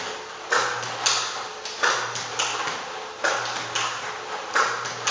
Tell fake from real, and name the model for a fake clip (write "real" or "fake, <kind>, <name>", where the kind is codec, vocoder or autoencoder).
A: real